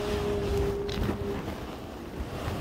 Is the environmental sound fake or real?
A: real